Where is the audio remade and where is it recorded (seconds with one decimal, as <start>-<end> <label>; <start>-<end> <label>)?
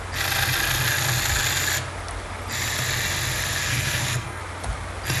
0.0-3.6 recorded; 3.6-4.4 remade; 4.4-5.2 recorded